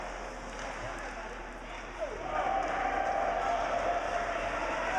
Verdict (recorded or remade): recorded